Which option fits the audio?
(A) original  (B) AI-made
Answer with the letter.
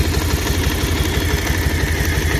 A